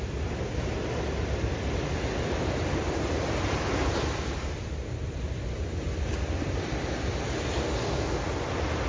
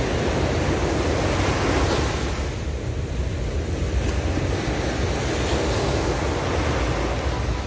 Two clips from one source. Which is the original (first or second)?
second